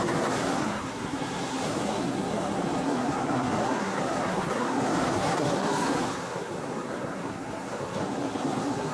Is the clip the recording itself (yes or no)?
no